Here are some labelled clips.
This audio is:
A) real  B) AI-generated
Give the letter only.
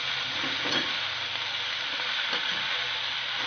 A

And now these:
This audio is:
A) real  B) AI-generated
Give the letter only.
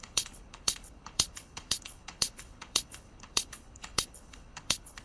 B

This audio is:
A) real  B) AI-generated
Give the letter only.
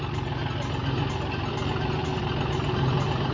A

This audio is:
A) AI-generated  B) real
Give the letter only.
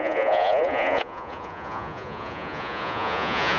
A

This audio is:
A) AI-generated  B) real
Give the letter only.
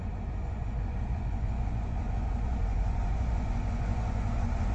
A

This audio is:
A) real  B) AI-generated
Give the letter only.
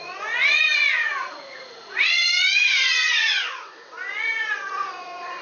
B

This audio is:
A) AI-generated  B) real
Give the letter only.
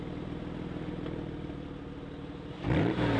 B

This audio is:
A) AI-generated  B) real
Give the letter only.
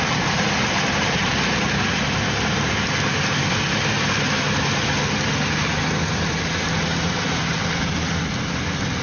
B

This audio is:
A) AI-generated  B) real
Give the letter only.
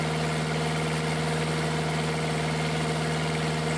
B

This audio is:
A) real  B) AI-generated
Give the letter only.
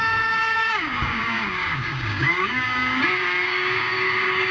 B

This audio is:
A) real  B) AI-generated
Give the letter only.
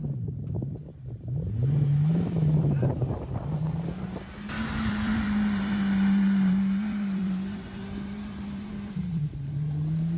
B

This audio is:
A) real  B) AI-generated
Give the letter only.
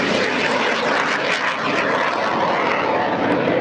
A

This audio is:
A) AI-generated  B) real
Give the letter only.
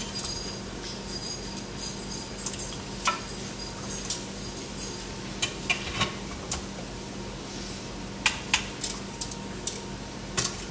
B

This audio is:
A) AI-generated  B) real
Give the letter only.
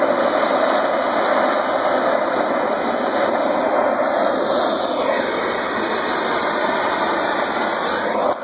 B